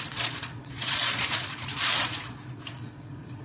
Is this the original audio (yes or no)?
no